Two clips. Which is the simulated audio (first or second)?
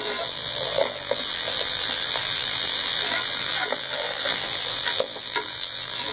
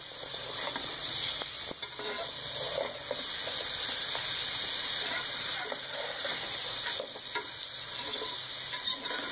first